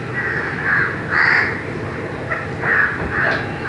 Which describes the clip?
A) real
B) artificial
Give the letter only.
A